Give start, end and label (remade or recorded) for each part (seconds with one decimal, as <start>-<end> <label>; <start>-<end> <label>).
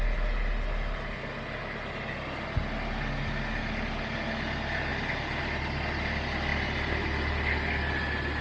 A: 0.0-8.4 recorded